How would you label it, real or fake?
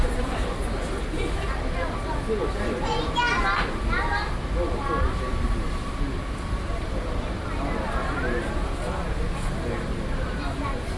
real